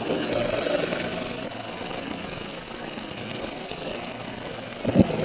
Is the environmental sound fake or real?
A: fake